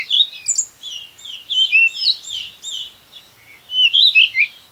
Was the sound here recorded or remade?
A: recorded